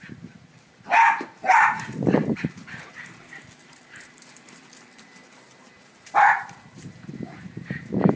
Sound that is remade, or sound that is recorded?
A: remade